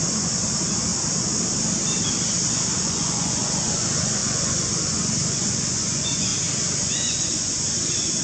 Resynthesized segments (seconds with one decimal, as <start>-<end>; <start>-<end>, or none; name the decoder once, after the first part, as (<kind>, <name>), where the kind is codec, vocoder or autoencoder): 0.0-0.9 (vocoder, Vocos); 2.5-6.3; 6.8-8.2